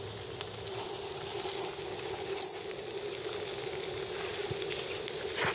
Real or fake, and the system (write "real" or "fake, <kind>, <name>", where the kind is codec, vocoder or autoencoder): real